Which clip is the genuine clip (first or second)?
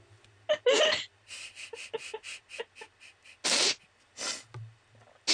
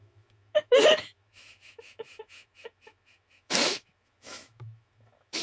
first